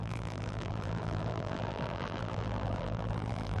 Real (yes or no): no